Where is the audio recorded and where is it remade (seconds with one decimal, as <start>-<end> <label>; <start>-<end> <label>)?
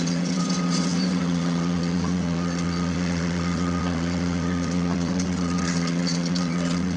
0.0-7.0 remade